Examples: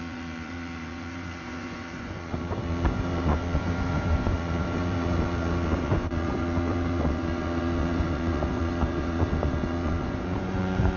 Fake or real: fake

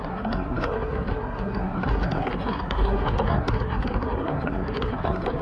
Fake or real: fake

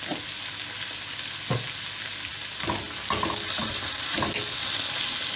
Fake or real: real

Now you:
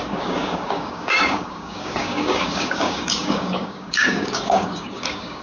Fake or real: fake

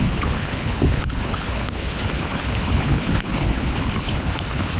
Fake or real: fake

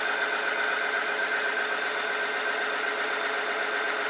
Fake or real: real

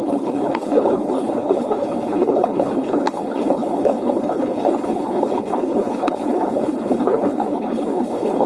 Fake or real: fake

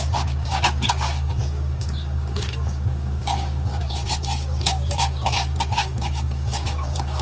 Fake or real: fake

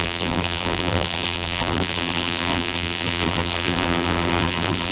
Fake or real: fake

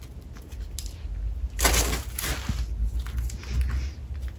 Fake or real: real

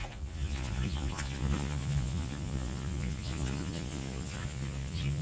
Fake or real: fake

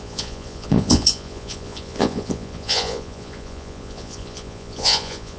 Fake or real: fake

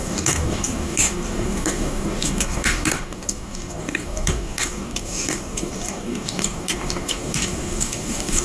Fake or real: fake